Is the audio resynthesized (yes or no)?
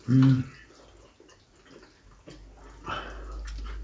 no